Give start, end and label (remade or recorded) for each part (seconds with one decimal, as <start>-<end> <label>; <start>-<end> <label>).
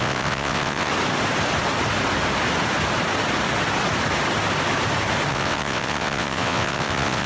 0.0-0.9 remade; 0.9-5.3 recorded; 5.3-7.3 remade